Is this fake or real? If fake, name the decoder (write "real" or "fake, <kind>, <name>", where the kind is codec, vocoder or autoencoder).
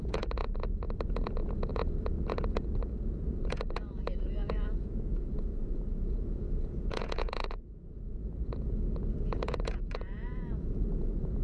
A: fake, vocoder, Vocos